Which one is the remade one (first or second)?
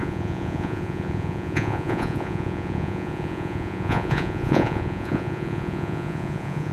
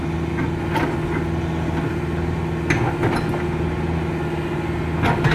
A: first